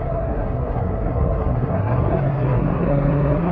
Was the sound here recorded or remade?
remade